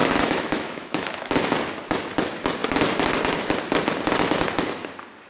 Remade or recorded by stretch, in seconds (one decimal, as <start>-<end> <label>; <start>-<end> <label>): 0.0-1.4 remade; 1.4-5.3 recorded